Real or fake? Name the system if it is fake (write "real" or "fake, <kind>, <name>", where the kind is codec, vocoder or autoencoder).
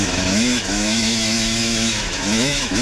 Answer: fake, autoencoder, DAC-VAE